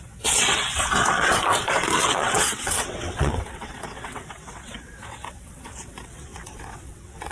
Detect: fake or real fake